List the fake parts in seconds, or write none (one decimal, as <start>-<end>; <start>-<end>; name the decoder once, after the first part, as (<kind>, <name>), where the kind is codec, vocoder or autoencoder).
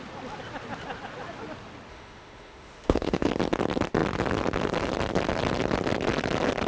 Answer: 1.9-3.3 (autoencoder, DAC-VAE)